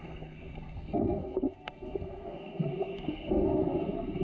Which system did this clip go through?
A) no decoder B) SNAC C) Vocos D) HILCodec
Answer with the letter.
B